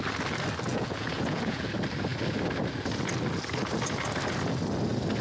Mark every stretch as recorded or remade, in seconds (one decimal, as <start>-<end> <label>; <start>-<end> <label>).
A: 0.0-0.7 recorded; 0.7-1.7 remade; 1.7-5.2 recorded